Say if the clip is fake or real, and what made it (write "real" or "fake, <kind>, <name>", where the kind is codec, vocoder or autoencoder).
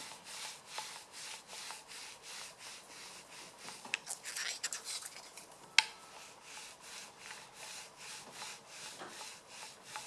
real